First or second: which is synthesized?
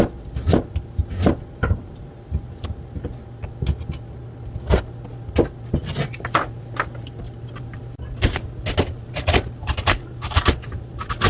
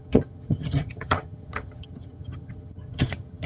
second